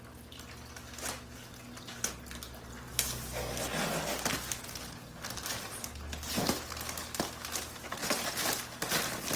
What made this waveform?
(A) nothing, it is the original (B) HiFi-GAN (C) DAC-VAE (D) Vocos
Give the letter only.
A